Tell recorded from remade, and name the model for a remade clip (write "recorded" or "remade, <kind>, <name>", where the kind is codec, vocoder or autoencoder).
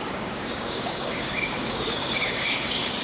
remade, codec, DAC